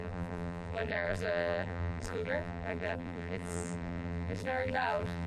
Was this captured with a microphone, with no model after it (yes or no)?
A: no